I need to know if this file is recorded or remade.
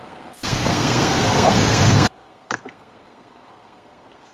remade